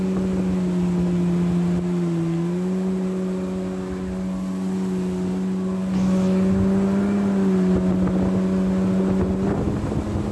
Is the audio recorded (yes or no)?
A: yes